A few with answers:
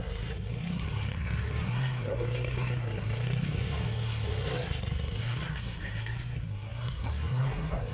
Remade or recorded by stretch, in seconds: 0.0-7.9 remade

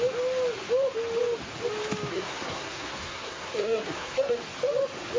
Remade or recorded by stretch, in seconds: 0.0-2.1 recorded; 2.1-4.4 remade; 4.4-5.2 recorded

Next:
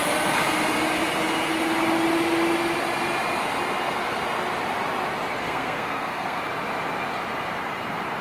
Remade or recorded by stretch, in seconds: 0.0-5.4 recorded; 5.4-6.4 remade; 6.4-8.2 recorded

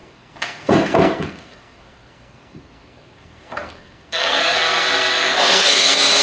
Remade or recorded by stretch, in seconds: 0.0-6.2 remade

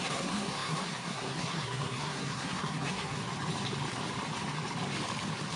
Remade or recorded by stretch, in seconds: 0.0-3.2 remade; 3.2-5.6 recorded